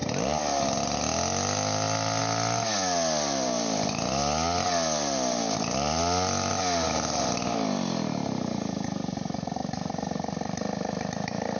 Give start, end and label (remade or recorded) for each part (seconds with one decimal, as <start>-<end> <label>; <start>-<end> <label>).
0.0-11.6 recorded